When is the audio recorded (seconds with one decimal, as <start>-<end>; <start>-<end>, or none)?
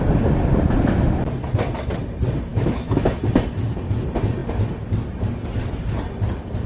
0.0-2.5; 3.2-6.7